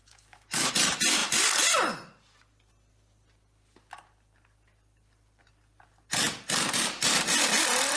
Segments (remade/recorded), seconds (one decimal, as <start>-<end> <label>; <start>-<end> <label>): 0.0-0.7 remade; 0.7-8.0 recorded